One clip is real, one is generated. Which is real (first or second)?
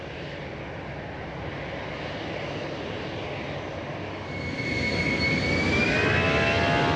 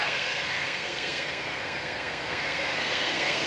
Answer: first